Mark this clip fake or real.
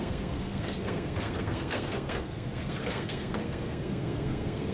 fake